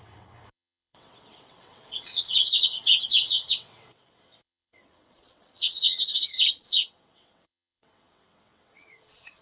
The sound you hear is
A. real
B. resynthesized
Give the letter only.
B